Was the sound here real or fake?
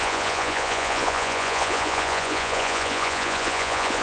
fake